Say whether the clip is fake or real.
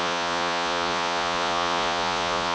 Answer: fake